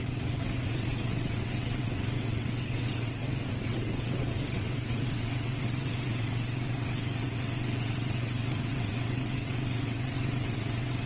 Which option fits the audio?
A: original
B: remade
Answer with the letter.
B